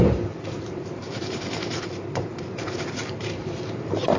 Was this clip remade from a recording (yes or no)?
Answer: yes